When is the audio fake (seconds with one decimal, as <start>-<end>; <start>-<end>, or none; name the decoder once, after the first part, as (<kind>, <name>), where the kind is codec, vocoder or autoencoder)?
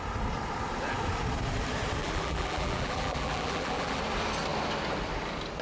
2.0-4.0 (vocoder, BigVGAN v2)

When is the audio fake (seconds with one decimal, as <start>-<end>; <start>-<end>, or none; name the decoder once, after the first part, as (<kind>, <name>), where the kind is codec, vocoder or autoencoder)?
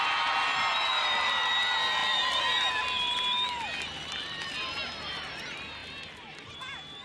0.9-1.6 (vocoder, BigVGAN v2); 2.0-2.7; 3.7-5.3; 5.8-6.6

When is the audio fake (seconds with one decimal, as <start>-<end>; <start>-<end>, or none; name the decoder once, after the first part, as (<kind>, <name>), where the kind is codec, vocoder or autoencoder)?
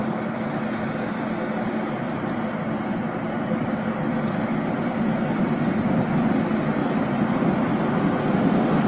6.8-7.4 (vocoder, BigVGAN v2)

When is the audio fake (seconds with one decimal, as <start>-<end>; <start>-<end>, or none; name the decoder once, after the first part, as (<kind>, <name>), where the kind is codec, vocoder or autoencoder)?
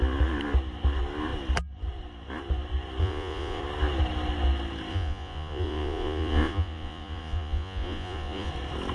3.0-3.6 (vocoder, Vocos); 4.9-8.5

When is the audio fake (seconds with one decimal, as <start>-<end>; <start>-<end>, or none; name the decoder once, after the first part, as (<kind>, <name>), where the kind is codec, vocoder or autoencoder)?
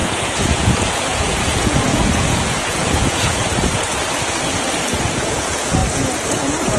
0.0-3.4 (vocoder, Vocos); 4.9-5.8; 6.3-6.8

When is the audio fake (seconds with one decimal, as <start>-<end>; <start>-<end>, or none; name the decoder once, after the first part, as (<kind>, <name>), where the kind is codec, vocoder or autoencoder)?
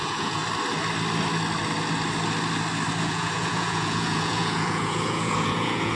0.0-0.4 (vocoder, Vocos); 3.0-5.9